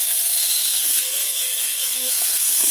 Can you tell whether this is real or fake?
fake